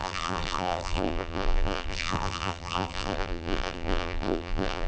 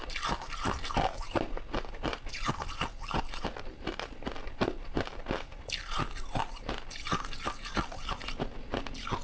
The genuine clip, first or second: second